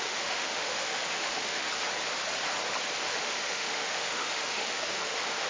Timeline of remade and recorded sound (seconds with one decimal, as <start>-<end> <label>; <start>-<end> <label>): 0.0-1.7 remade; 1.7-3.0 recorded; 3.0-5.5 remade